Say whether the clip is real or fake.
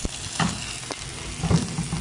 real